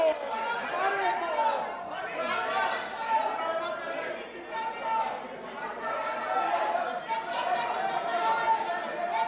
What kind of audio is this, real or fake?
real